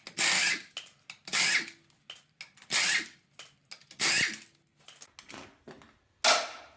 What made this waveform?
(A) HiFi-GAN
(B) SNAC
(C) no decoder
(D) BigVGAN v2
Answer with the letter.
C